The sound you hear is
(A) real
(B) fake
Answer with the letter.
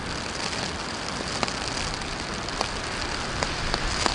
A